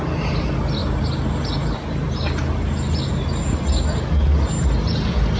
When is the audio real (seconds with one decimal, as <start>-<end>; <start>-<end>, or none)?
0.0-5.4